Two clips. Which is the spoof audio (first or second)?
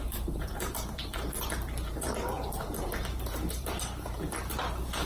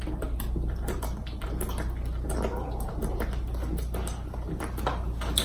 first